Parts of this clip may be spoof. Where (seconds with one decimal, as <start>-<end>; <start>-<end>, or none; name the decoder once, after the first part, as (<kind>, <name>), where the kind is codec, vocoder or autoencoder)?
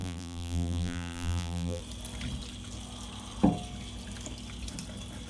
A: 0.0-1.8 (vocoder, BigVGAN v2)